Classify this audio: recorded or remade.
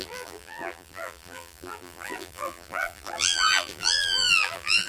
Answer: remade